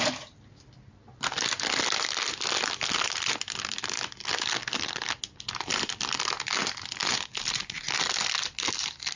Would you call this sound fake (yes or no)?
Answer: no